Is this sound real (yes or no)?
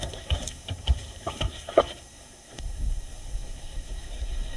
no